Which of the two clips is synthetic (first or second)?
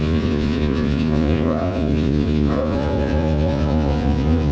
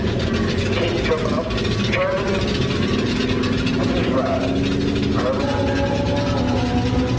first